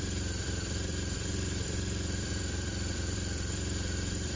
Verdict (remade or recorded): remade